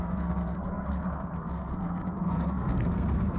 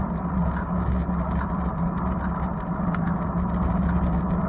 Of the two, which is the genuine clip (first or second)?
second